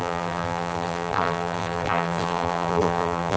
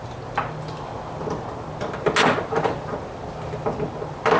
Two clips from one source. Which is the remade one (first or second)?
first